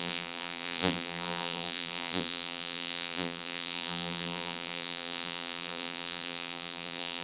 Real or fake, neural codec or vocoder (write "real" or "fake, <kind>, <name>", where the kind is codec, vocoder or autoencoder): fake, vocoder, BigVGAN v2